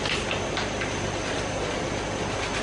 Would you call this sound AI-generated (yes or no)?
no